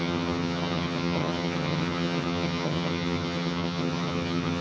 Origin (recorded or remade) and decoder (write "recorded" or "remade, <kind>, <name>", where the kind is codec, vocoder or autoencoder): remade, vocoder, HiFi-GAN